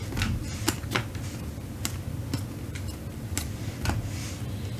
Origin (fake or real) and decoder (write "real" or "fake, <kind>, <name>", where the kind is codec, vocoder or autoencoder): real